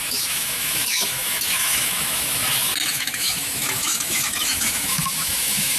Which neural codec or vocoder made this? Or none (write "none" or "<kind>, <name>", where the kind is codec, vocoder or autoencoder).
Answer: autoencoder, DAC-VAE